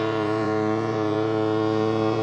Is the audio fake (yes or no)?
yes